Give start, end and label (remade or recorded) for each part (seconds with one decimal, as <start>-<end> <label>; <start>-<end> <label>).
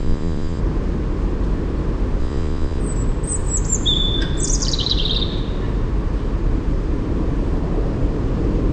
0.0-0.6 remade; 0.6-2.2 recorded; 2.2-2.8 remade; 2.8-8.7 recorded